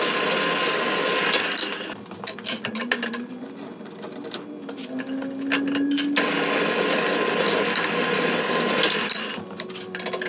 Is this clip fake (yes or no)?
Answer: no